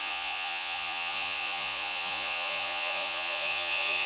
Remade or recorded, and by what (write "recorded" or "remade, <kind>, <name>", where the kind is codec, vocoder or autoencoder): remade, vocoder, Vocos